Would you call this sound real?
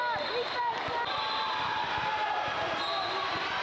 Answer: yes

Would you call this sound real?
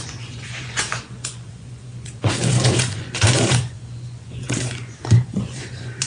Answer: no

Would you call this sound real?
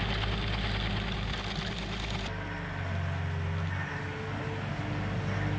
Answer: yes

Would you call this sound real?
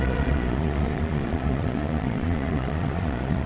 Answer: no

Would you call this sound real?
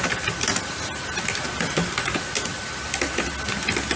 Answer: yes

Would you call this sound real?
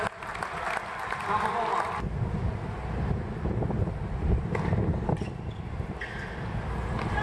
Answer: yes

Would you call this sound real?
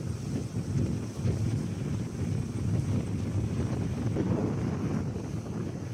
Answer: yes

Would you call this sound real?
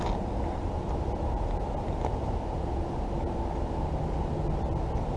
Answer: yes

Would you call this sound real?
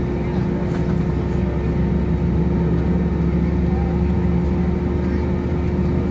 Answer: yes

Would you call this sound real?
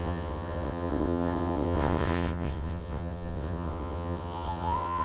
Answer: no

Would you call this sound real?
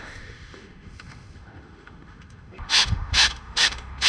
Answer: no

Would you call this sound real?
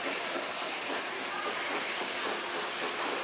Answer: yes